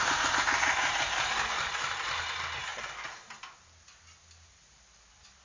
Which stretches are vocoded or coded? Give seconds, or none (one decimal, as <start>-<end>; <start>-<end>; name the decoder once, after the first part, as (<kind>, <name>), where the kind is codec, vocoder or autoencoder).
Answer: none